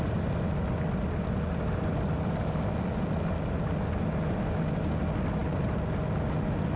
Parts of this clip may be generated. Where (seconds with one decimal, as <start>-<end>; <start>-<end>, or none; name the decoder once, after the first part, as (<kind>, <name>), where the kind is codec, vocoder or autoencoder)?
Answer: none